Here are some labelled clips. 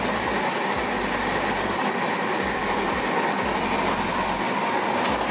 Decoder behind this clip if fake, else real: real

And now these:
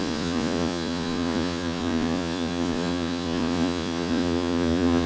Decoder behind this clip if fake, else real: fake, vocoder, Vocos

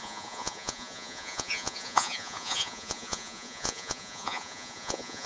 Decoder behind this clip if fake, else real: fake, vocoder, Vocos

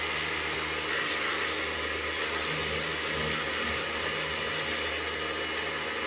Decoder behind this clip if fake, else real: real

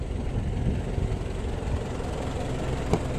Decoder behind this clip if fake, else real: real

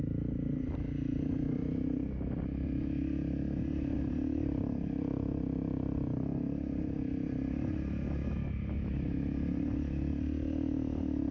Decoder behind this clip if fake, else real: real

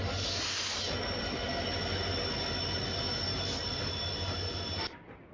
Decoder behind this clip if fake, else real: real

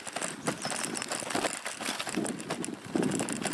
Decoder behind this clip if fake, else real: real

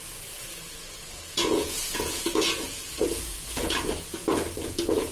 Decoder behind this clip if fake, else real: fake, vocoder, Vocos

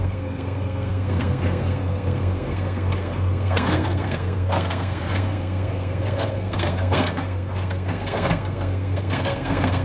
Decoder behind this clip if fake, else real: fake, codec, SNAC